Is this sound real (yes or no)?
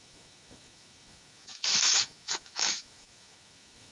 no